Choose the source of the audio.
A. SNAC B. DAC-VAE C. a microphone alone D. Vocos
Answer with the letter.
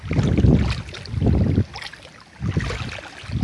C